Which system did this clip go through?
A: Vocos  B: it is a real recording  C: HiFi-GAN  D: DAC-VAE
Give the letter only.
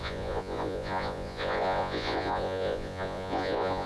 A